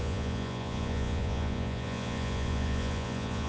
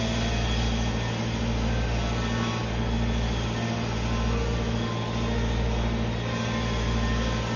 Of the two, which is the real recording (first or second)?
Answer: second